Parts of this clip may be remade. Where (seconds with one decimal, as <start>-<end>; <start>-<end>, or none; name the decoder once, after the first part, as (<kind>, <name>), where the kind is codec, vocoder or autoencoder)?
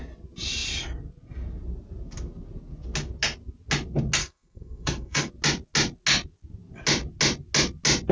4.2-5.3 (codec, SNAC)